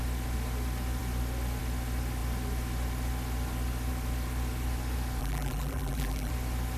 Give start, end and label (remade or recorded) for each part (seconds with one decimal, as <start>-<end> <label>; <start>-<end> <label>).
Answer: 0.0-5.2 recorded; 5.2-6.3 remade; 6.3-6.8 recorded